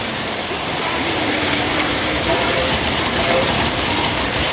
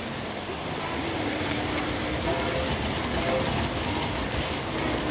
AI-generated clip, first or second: first